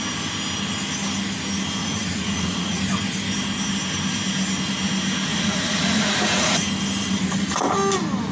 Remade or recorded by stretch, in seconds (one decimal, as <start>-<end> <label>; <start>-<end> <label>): 0.0-1.8 recorded; 1.8-2.8 remade; 2.8-5.3 recorded; 5.3-6.7 remade; 6.7-8.3 recorded

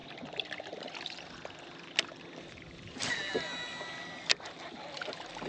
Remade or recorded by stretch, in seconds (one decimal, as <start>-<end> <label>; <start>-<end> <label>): 0.0-5.5 recorded